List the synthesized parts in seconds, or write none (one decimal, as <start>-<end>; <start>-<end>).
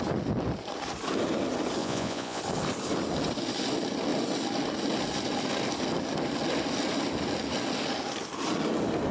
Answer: 1.8-2.4